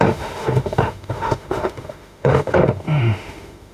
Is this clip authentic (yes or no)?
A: no